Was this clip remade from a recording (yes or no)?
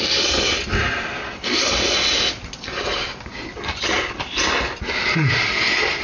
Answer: no